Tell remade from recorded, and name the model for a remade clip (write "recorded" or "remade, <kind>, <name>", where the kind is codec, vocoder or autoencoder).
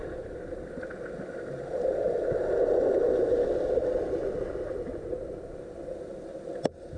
recorded